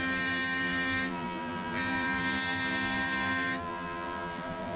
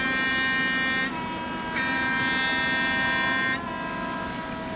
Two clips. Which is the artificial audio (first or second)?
first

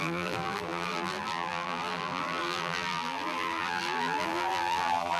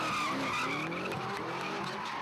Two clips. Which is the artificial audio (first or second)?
first